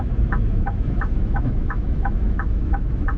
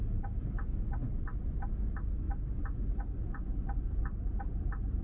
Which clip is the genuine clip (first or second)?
second